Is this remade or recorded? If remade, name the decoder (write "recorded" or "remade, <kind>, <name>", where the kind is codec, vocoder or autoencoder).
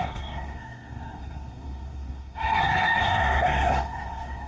remade, codec, SNAC